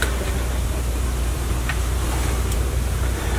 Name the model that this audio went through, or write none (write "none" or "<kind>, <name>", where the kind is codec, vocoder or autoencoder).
vocoder, BigVGAN v2